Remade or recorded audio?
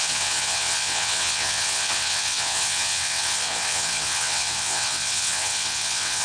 remade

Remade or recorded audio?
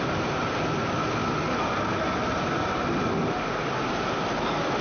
recorded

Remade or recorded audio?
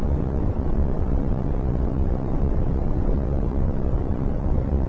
remade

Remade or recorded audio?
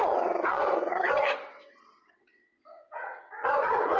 remade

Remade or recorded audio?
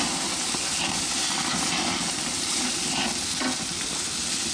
recorded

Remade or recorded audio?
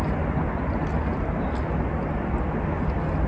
recorded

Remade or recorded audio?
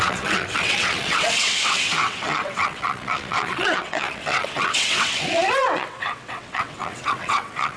remade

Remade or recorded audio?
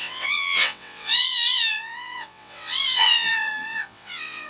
remade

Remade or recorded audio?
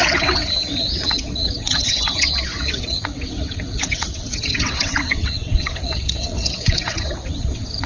remade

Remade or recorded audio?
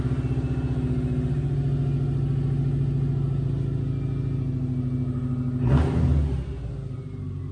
recorded